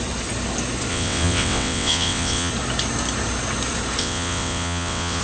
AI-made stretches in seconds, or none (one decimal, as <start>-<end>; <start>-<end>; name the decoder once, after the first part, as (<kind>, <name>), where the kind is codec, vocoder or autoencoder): 0.9-2.5 (vocoder, WaveNeXt); 4.0-5.2